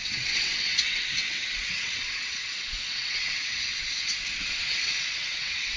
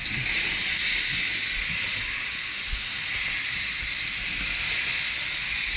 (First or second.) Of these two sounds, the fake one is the first